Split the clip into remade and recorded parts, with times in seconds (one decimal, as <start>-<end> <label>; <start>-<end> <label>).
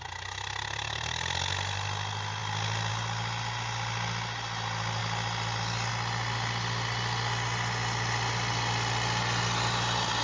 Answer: 0.0-10.2 recorded